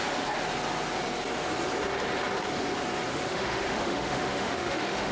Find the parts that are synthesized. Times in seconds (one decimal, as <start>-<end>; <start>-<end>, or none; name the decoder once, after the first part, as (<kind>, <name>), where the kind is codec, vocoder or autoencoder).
3.1-5.1 (autoencoder, DAC-VAE)